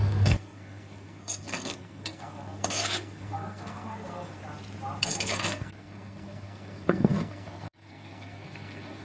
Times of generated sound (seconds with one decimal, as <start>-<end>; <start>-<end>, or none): 0.0-4.4; 5.0-9.0